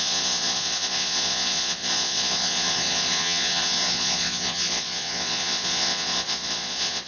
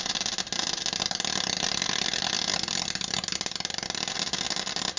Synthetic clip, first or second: first